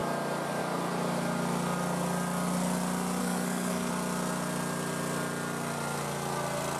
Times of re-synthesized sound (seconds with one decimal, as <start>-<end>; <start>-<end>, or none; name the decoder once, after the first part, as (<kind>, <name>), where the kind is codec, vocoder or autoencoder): 3.2-3.9 (codec, SNAC)